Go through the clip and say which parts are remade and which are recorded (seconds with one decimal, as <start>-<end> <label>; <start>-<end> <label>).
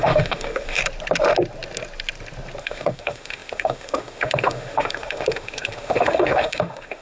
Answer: 0.0-0.8 remade; 0.8-2.6 recorded; 2.6-7.0 remade